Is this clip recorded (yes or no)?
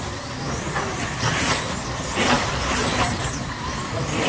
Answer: yes